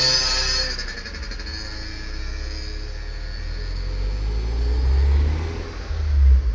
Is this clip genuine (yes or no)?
yes